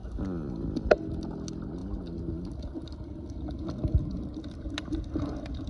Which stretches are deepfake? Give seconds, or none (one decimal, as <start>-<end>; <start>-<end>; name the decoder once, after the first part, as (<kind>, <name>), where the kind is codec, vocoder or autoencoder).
none